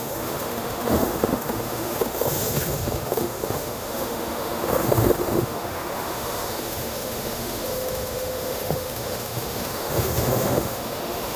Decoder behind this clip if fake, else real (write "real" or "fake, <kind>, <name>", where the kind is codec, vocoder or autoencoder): fake, autoencoder, DAC-VAE